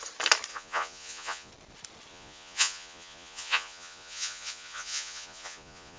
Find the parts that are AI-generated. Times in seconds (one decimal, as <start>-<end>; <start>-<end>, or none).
0.5-1.5; 2.1-6.0

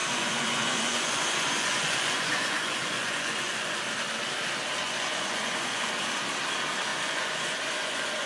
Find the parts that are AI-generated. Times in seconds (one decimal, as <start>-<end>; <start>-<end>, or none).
0.0-3.8; 4.8-5.9; 6.9-8.3